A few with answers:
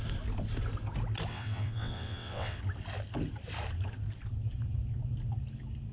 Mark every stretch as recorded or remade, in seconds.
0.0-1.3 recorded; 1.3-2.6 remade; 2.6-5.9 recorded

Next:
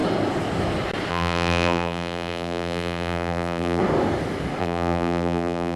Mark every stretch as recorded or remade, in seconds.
0.0-1.1 recorded; 1.1-3.8 remade; 3.8-4.6 recorded; 4.6-5.8 remade

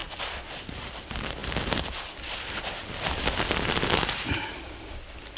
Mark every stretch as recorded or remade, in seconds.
0.0-5.4 recorded